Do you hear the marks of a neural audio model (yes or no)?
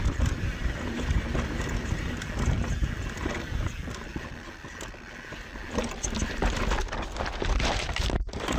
no